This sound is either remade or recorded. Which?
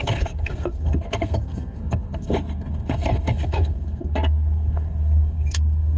remade